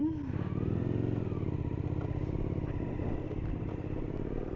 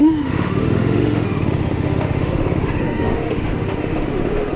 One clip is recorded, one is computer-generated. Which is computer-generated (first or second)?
second